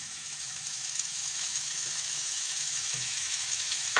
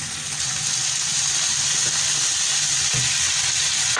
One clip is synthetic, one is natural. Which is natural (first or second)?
second